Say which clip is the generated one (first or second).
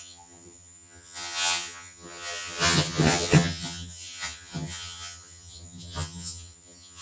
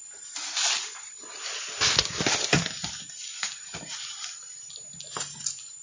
first